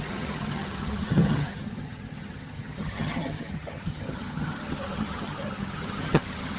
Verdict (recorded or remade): remade